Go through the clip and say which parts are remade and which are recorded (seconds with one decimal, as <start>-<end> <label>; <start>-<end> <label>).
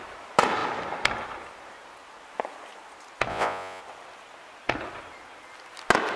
0.0-3.3 recorded; 3.3-3.8 remade; 3.8-6.2 recorded